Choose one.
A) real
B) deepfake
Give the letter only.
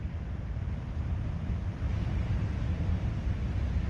A